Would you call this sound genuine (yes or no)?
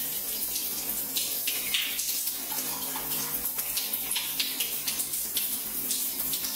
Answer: yes